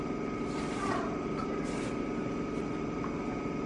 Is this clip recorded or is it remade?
remade